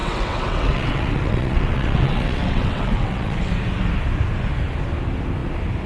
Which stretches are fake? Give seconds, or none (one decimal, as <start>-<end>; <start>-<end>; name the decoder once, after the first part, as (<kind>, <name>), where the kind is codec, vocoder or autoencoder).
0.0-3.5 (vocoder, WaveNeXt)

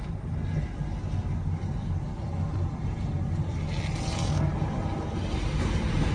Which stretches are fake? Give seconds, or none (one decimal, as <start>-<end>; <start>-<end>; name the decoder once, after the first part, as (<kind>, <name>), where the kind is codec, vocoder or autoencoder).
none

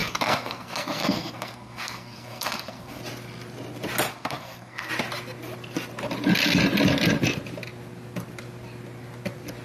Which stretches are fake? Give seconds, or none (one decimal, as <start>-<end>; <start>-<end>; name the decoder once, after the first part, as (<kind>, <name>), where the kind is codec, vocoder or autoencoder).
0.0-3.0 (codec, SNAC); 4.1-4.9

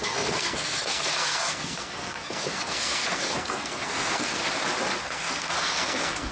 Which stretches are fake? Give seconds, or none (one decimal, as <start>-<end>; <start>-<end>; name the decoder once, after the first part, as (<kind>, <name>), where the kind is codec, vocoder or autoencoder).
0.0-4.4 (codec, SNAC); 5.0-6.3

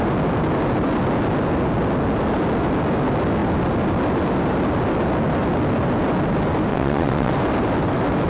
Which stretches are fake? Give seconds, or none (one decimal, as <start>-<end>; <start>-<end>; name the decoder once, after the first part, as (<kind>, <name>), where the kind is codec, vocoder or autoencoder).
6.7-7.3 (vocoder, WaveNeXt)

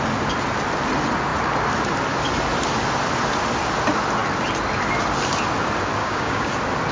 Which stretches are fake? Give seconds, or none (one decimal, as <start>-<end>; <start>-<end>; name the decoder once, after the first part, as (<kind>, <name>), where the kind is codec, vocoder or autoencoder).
6.0-6.5 (codec, DAC)

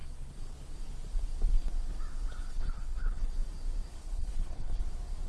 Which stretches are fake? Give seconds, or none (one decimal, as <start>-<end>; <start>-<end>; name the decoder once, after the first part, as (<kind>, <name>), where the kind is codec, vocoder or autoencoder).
2.5-3.3 (codec, HILCodec); 3.9-4.8